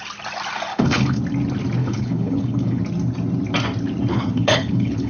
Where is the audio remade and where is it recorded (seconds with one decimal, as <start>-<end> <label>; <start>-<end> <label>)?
0.0-0.7 recorded; 0.7-1.2 remade; 1.2-1.8 recorded; 1.8-2.8 remade; 2.8-4.1 recorded; 4.1-5.1 remade